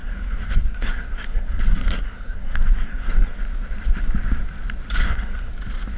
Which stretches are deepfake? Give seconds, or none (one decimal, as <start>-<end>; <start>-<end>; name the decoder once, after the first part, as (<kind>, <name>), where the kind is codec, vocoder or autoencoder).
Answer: 0.0-3.4 (codec, SNAC); 5.0-5.5